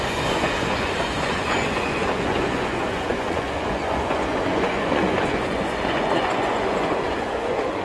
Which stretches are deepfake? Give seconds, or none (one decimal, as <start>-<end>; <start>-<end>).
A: 0.0-7.8